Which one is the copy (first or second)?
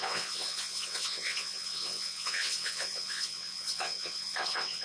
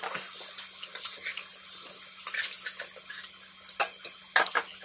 first